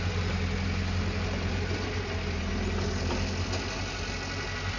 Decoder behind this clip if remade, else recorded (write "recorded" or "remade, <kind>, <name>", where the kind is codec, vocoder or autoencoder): recorded